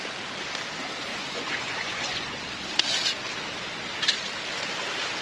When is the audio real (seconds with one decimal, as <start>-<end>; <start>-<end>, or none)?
0.0-1.1; 2.4-5.2